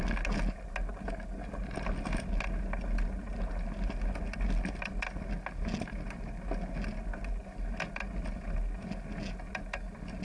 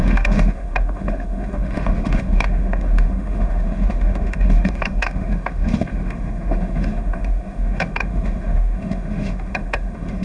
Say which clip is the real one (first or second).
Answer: first